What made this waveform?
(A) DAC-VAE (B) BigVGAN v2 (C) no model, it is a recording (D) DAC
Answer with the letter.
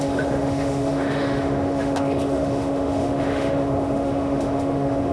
A